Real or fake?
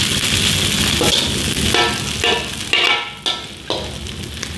real